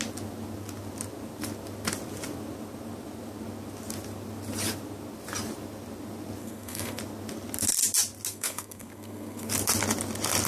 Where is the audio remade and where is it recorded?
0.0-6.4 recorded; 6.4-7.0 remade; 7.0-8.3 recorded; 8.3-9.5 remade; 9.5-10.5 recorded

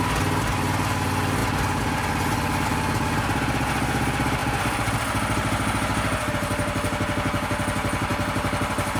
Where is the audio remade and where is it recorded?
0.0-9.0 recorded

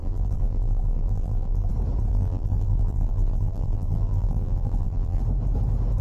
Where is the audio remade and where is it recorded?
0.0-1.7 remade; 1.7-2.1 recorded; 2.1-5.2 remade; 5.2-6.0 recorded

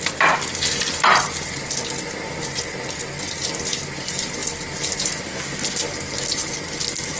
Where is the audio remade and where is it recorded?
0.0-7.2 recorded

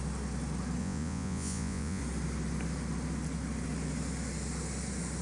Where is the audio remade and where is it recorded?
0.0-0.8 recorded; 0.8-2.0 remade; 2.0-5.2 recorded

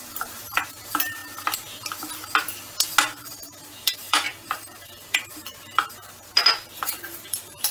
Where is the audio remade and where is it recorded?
0.0-1.2 remade; 1.2-3.0 recorded; 3.0-7.7 remade